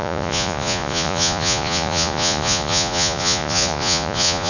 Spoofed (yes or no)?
yes